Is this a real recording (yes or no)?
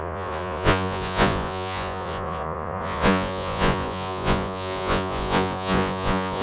no